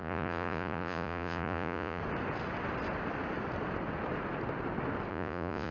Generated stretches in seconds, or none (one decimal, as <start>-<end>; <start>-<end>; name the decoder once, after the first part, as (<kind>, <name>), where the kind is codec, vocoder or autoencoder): 0.0-2.0 (vocoder, Vocos); 5.1-5.7